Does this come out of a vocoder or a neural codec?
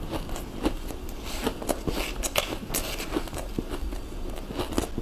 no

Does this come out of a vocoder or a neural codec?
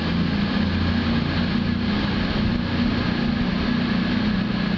no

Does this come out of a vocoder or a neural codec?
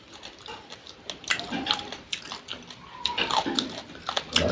no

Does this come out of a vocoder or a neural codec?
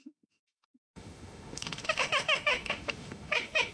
yes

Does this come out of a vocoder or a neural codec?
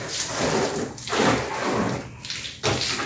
no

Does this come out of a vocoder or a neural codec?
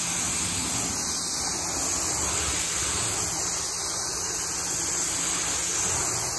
no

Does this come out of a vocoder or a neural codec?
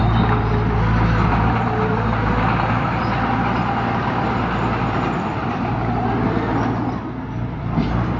no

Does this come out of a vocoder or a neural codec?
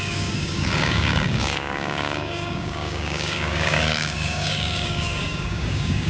yes